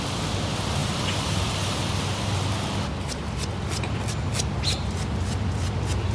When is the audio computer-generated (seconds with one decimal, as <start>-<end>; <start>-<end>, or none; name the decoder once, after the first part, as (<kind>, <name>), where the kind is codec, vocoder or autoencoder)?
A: none